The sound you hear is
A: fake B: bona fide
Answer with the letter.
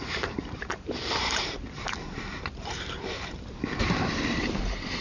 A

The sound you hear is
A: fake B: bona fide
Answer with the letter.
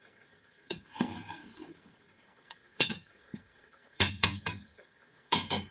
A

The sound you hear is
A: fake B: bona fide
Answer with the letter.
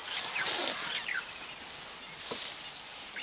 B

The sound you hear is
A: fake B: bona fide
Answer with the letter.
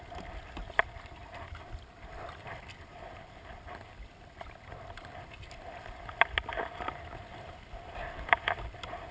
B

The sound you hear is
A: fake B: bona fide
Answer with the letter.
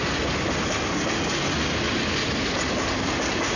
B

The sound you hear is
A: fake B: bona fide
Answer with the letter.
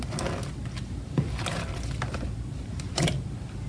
B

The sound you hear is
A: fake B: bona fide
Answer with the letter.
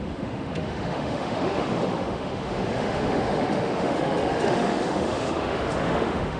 A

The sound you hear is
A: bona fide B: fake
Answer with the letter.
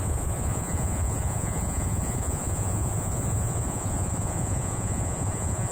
B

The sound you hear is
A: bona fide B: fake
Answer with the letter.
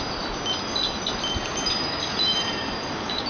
A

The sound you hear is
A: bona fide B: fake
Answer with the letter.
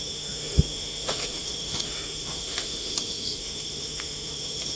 B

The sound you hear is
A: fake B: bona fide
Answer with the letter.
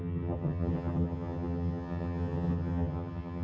A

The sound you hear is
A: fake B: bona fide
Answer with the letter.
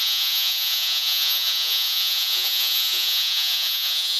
A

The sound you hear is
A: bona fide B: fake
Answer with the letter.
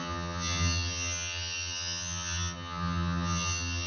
B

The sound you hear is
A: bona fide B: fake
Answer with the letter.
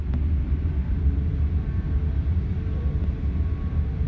A